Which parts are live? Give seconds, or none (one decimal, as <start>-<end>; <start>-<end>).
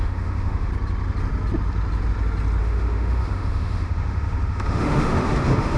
0.7-2.6